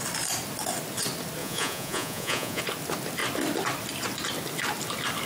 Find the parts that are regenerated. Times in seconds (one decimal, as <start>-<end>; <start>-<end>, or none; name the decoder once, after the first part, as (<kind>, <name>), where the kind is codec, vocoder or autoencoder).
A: 1.4-2.6 (vocoder, Vocos)